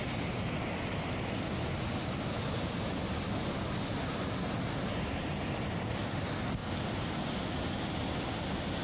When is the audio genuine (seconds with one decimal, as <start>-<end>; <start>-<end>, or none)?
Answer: 0.0-8.8